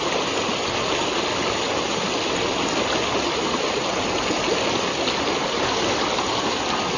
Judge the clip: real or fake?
real